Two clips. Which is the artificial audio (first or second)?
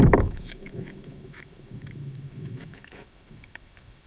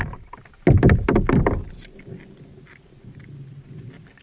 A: first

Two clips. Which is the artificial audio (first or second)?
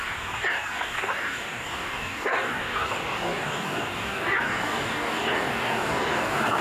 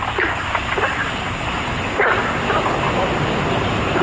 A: first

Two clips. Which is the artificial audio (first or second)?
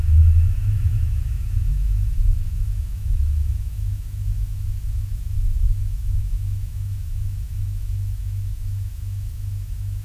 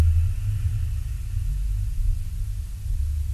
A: first